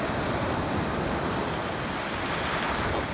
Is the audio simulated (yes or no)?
no